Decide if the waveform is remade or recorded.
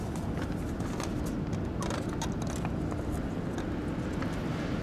recorded